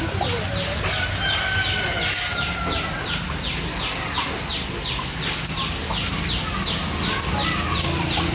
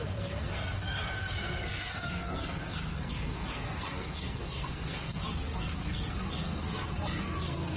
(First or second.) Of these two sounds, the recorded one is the first